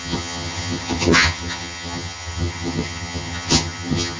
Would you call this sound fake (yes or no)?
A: yes